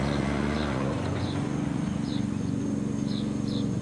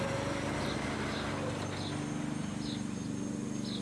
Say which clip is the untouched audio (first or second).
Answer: second